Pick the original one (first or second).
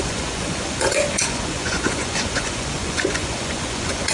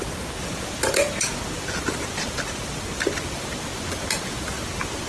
second